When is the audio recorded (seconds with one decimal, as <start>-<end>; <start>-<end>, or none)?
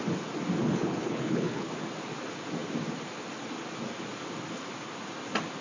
0.0-0.6; 1.7-5.6